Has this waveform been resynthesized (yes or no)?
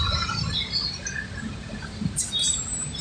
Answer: yes